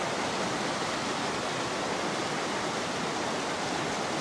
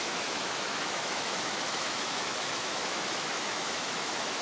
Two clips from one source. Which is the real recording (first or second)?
first